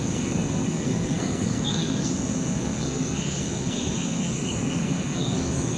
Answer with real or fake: fake